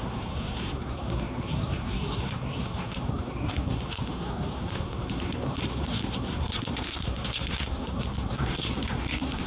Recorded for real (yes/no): no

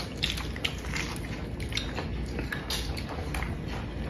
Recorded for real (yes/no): yes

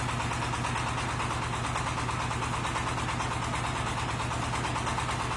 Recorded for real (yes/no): yes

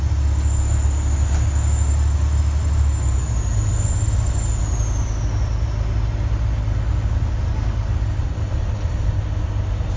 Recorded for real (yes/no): yes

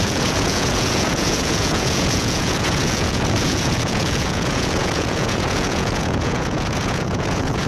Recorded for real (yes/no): no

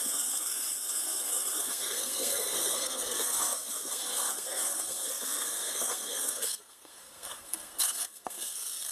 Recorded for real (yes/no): no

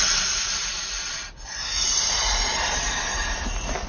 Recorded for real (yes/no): yes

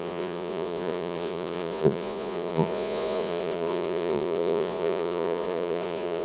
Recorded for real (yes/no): no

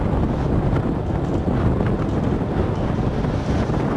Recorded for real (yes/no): yes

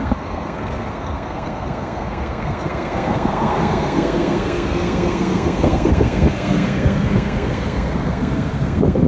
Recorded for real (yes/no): no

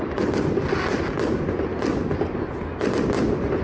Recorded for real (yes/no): yes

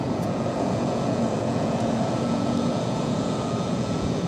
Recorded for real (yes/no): no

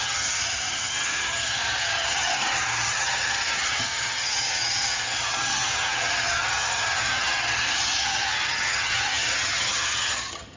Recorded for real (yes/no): no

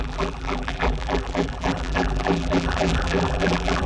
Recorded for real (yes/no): no